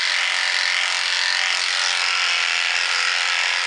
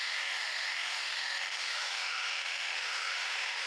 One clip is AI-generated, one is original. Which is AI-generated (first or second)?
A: second